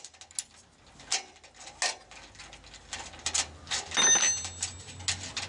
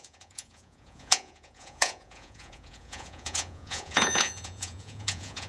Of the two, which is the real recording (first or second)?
first